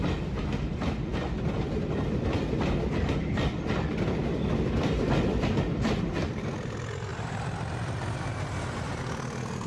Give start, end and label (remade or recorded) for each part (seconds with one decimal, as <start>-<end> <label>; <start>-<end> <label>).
0.0-9.7 recorded